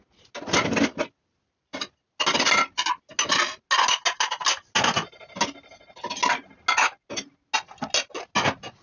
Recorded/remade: recorded